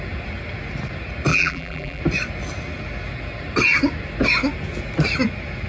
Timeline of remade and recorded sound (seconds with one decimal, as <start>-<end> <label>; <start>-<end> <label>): 0.0-1.3 recorded; 1.3-2.0 remade; 2.0-5.7 recorded